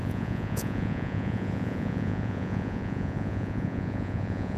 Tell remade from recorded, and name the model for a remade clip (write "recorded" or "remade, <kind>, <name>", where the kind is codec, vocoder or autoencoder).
remade, vocoder, Vocos